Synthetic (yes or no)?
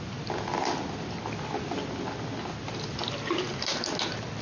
no